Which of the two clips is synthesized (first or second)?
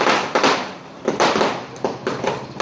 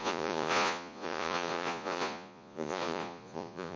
second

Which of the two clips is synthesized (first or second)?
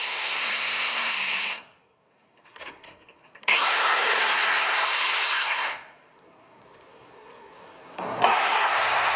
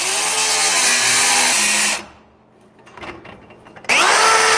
first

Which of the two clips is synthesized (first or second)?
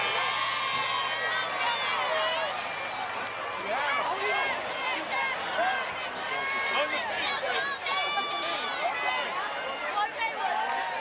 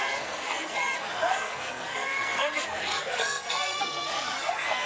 second